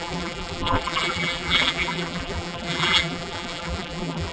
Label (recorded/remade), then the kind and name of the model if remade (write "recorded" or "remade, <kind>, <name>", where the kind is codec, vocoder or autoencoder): remade, vocoder, BigVGAN v2